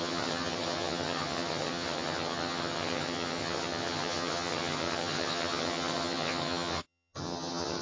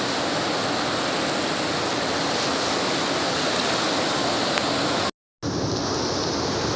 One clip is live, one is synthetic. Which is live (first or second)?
second